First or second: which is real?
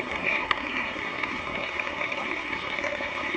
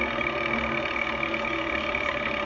second